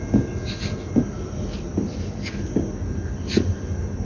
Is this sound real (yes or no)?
yes